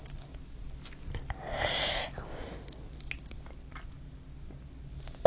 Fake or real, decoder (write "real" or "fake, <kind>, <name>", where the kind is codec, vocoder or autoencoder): real